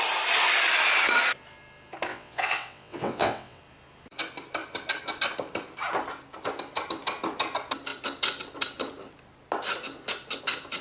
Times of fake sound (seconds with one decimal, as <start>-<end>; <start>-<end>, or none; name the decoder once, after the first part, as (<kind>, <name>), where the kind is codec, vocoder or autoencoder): 2.1-3.6 (vocoder, WaveNeXt)